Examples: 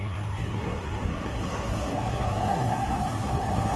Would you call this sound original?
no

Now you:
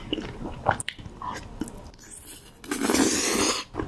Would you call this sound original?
yes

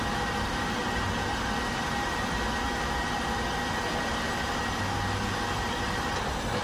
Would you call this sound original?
yes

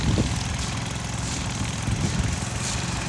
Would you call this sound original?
yes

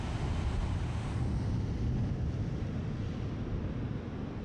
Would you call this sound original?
yes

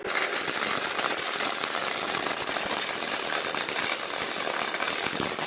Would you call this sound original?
yes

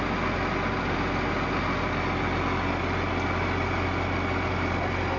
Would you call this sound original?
yes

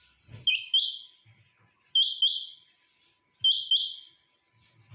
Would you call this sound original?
yes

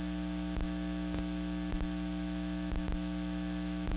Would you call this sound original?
yes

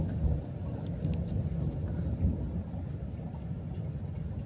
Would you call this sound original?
yes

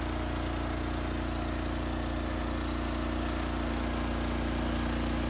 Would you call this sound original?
yes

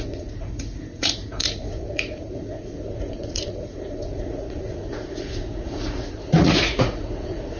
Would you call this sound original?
no